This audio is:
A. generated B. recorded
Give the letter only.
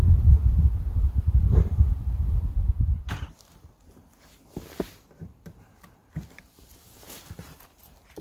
A